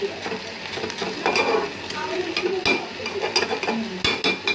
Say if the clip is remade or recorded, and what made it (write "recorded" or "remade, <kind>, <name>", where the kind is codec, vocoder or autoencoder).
recorded